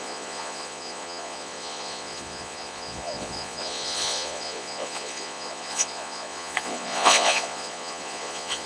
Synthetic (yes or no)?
yes